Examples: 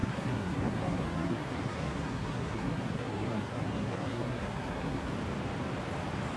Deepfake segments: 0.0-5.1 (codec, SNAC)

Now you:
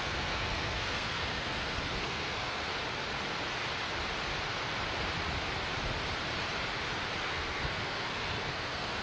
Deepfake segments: 0.0-2.6 (codec, SNAC); 7.2-9.0

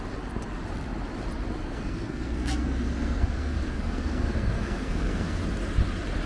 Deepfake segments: 1.6-5.4 (codec, SNAC)

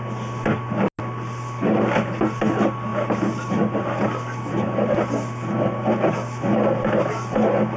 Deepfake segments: none

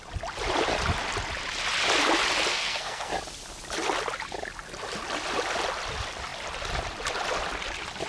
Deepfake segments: 2.5-3.1 (codec, SNAC)

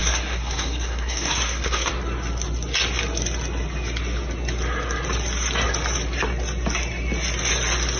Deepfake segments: 0.0-1.9 (codec, SNAC)